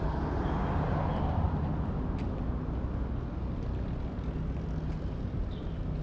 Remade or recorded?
recorded